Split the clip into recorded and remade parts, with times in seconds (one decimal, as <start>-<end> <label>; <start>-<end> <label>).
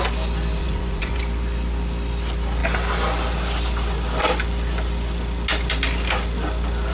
0.0-0.6 recorded; 0.6-1.2 remade; 1.2-6.9 recorded